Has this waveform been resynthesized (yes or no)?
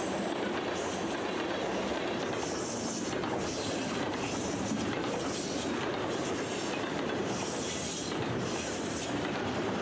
yes